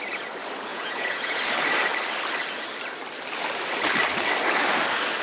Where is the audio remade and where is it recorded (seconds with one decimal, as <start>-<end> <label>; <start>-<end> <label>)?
0.0-0.7 recorded; 0.7-1.4 remade; 1.4-5.2 recorded